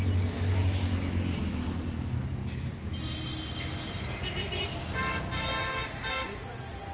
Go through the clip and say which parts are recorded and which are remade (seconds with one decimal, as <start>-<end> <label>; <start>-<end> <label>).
0.0-6.9 recorded